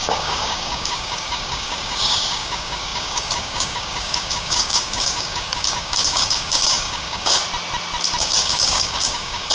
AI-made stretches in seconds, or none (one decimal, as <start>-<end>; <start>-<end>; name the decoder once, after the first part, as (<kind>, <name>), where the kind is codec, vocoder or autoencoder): 0.0-7.4 (codec, DAC); 8.2-9.5